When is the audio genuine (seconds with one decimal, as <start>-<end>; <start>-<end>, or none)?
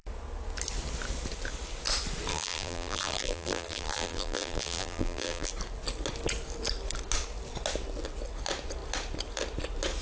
0.0-2.3; 5.5-10.0